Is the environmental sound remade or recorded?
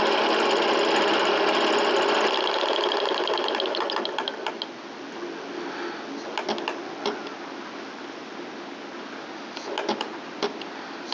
recorded